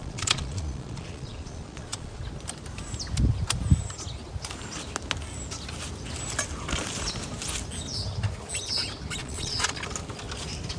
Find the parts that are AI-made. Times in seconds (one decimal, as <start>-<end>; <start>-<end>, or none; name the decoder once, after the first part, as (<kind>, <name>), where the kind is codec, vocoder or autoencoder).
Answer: 0.0-2.2 (vocoder, Vocos); 9.2-9.8

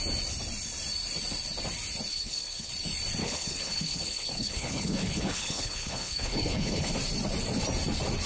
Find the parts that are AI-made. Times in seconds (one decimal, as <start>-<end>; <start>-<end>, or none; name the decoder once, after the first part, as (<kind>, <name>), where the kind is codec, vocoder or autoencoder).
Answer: 2.1-2.7 (codec, HILCodec); 3.2-6.9

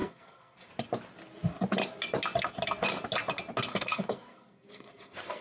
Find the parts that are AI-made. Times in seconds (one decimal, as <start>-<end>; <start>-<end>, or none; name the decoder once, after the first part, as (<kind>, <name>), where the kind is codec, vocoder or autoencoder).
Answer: 0.0-0.7 (codec, SNAC); 3.7-5.4